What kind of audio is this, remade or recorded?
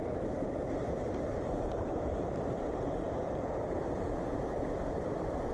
remade